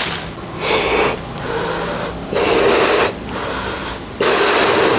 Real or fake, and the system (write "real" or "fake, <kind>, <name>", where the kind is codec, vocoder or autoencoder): real